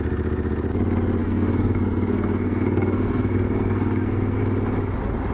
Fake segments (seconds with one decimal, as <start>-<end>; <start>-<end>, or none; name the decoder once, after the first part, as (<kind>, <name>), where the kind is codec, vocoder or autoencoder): 1.2-4.4 (codec, SNAC)